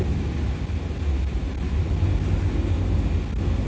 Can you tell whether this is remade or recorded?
recorded